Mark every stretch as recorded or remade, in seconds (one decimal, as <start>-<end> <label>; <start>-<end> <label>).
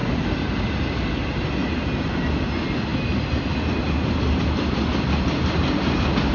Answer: 0.0-6.3 recorded